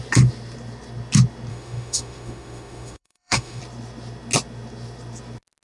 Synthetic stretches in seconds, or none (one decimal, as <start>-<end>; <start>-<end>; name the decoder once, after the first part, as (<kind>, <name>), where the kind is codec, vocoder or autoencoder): 1.5-3.6 (autoencoder, DAC-VAE)